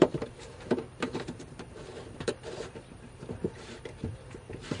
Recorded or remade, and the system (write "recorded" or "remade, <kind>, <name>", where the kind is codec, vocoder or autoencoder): remade, vocoder, BigVGAN v2